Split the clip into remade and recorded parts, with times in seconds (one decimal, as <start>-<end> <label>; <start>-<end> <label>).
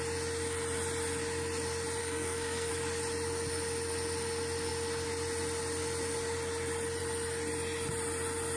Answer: 0.0-2.0 recorded; 2.0-2.7 remade; 2.7-8.6 recorded